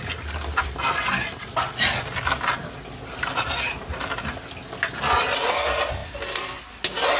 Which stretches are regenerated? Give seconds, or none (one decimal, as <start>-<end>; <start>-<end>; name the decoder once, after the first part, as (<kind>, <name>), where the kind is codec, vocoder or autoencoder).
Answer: none